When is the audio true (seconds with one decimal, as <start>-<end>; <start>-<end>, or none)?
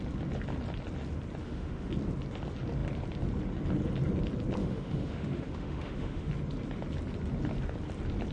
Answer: 0.0-1.4; 1.9-4.6; 6.3-8.3